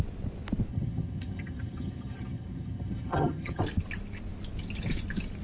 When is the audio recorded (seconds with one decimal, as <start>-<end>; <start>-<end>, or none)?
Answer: 0.0-0.7; 3.6-5.4